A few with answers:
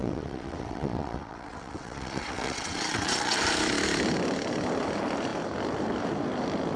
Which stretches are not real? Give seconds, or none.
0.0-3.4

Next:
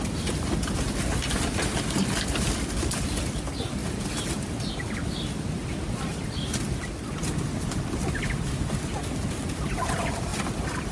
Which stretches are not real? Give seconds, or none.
none